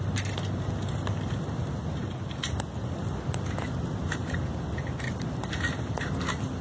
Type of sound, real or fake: real